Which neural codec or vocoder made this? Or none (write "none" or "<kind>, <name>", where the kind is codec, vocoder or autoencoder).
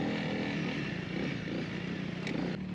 none